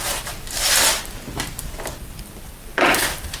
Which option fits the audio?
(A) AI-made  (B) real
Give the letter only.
A